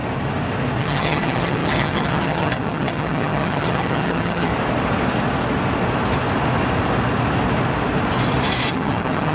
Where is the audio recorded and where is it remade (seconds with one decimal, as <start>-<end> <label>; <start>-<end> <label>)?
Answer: 0.0-0.8 recorded; 0.8-4.5 remade; 4.5-8.7 recorded; 8.7-9.3 remade